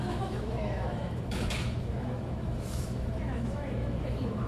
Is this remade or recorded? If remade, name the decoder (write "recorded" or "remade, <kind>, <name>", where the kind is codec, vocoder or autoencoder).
remade, autoencoder, DAC-VAE